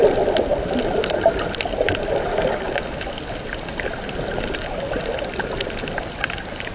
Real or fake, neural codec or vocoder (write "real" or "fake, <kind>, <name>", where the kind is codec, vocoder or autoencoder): real